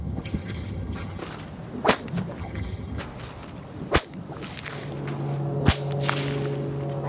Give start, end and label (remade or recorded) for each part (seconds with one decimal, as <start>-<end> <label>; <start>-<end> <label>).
0.0-1.2 remade; 1.2-2.4 recorded; 2.4-3.0 remade; 3.0-7.1 recorded